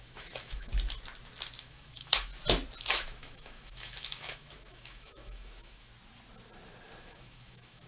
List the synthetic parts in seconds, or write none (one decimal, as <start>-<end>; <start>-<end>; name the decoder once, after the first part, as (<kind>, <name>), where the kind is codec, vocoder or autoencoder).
0.0-0.7 (autoencoder, DAC-VAE); 1.6-2.3; 2.9-5.9; 7.0-7.9

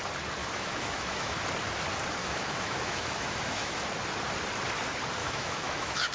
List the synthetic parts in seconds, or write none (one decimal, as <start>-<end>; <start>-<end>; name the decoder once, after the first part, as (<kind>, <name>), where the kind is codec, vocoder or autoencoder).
0.4-1.4 (autoencoder, DAC-VAE); 2.2-3.7; 5.2-6.1

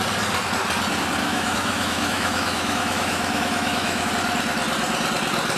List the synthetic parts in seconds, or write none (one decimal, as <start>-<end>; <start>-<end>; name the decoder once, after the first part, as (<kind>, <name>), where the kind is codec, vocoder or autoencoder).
1.2-4.1 (autoencoder, DAC-VAE)

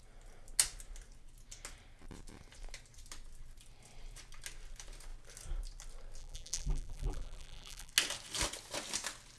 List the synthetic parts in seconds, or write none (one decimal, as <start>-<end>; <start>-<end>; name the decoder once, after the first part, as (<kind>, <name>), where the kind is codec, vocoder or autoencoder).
6.2-7.9 (vocoder, BigVGAN v2)